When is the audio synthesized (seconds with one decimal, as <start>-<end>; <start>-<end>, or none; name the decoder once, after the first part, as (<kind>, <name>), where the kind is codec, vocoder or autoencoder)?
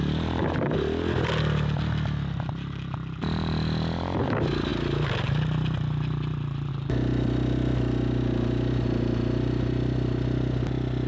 none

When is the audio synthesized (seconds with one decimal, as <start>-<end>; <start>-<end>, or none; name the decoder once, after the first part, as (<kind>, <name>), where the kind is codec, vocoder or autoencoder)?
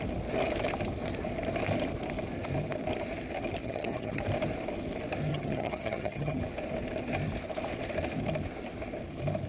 3.6-4.2 (vocoder, HiFi-GAN); 5.3-6.4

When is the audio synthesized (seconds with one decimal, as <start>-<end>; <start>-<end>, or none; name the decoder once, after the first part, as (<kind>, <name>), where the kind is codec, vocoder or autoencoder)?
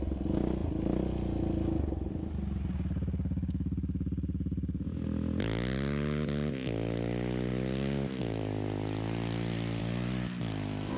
none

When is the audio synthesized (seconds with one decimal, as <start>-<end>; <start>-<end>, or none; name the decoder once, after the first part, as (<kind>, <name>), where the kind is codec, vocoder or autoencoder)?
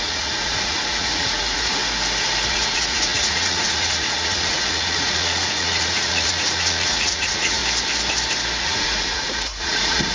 0.0-1.8 (vocoder, Vocos); 2.5-7.6; 8.6-10.1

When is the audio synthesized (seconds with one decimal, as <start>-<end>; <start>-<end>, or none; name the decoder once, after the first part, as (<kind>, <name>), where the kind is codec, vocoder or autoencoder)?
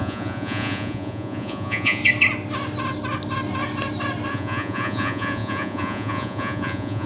0.0-2.0 (vocoder, Vocos); 4.3-7.1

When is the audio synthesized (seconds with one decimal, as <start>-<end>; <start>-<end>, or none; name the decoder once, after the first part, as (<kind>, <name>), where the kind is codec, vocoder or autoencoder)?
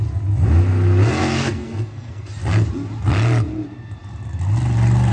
1.2-2.3 (codec, SNAC)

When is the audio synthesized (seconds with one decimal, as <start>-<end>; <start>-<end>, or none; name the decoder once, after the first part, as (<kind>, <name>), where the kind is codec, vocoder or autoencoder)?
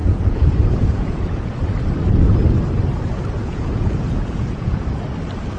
0.0-1.5 (vocoder, Vocos); 3.4-4.8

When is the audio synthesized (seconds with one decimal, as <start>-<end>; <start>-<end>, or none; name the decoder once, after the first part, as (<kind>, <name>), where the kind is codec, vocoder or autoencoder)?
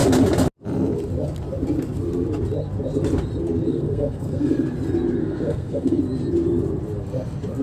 3.7-4.5 (codec, SNAC); 5.2-6.0